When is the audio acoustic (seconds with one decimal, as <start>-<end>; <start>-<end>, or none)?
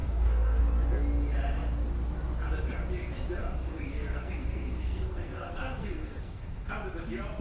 0.6-3.4; 6.7-7.4